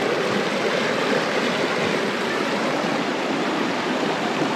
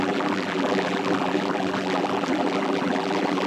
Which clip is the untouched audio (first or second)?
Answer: first